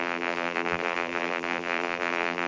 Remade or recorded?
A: remade